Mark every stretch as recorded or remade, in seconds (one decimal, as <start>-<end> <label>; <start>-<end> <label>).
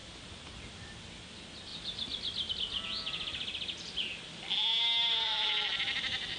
0.0-6.4 recorded